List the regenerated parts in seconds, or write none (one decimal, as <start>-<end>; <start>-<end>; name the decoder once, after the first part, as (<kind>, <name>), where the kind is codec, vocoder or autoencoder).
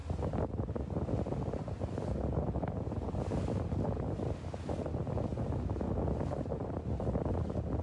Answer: none